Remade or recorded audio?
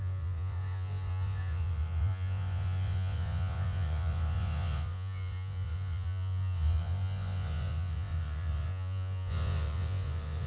remade